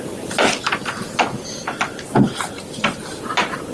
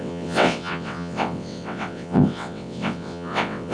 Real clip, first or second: first